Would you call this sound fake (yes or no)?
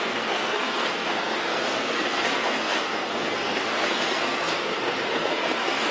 yes